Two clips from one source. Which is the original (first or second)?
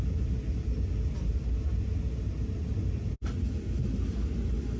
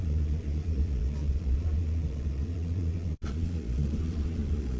first